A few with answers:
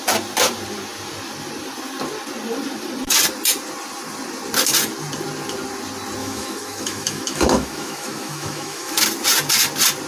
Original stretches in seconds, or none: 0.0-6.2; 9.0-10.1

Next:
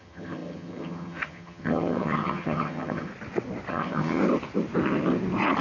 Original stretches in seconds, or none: 3.1-3.7; 4.2-5.6

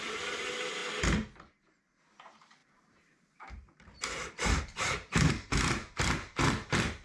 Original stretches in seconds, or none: 0.8-1.8